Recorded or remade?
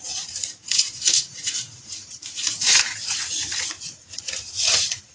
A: remade